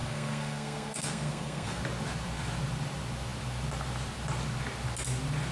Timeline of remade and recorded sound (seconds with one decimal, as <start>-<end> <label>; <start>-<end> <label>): 0.0-1.8 remade; 1.8-5.5 recorded